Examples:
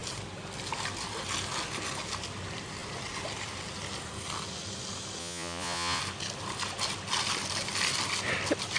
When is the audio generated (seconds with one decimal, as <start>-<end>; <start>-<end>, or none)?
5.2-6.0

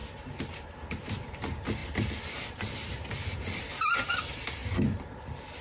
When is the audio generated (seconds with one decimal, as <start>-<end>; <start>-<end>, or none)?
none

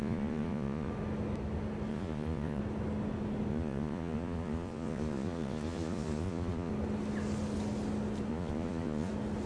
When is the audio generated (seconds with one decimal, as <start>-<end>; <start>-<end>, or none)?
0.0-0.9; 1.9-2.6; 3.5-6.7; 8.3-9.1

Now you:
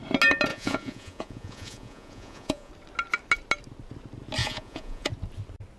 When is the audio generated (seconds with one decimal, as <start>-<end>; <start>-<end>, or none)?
0.5-2.7; 4.4-5.1

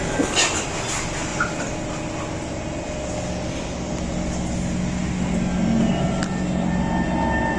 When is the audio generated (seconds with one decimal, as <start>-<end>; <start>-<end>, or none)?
none

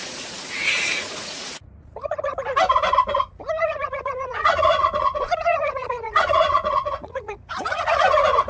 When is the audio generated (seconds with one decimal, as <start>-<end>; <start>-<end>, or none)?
0.0-2.3; 3.6-8.5

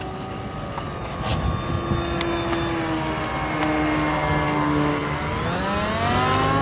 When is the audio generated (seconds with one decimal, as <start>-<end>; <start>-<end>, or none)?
none

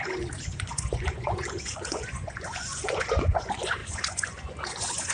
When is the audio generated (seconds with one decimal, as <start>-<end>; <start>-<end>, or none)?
0.0-5.1